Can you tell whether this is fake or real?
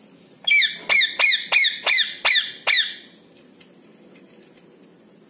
real